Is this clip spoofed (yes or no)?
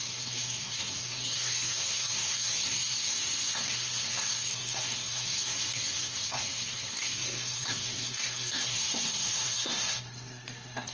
yes